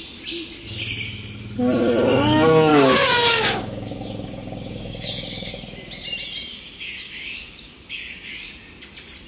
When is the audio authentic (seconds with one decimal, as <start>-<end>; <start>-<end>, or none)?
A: 0.0-2.7; 5.5-6.5; 8.3-9.3